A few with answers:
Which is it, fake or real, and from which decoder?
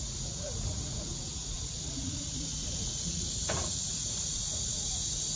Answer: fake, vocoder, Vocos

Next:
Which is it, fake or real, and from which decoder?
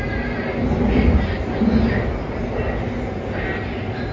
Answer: real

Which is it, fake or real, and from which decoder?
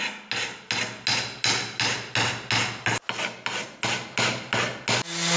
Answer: real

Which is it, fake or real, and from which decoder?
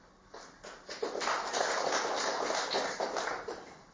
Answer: real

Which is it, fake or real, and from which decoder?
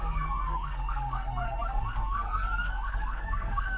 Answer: fake, codec, SNAC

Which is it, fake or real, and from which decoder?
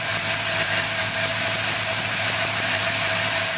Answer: real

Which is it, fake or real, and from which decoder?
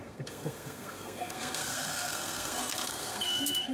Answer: fake, codec, SNAC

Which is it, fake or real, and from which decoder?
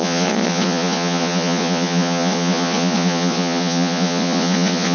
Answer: fake, vocoder, Vocos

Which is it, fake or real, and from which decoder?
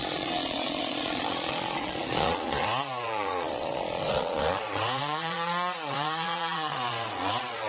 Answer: fake, vocoder, Vocos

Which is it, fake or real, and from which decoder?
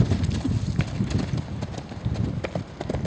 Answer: real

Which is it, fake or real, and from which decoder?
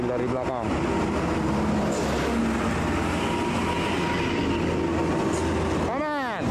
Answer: real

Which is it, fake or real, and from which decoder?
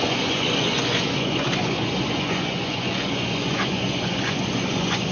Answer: fake, vocoder, Vocos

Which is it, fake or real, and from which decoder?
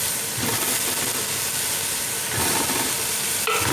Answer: real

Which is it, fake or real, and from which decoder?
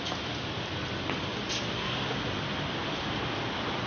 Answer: real